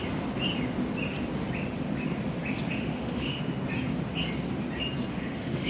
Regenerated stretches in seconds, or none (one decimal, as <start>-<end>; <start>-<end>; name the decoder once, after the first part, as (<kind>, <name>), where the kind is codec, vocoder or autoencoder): 2.7-3.4 (autoencoder, DAC-VAE); 5.1-5.7